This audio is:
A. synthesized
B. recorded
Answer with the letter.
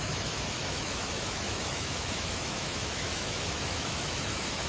A